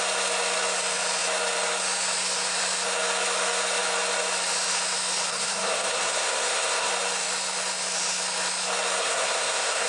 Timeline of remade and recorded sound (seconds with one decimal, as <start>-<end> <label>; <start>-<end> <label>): 0.0-5.3 recorded; 5.3-6.9 remade; 6.9-9.0 recorded; 9.0-9.9 remade